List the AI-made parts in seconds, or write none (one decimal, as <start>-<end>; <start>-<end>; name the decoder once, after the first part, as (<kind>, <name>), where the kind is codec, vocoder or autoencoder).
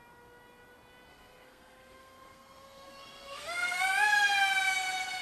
1.1-3.8 (codec, SNAC)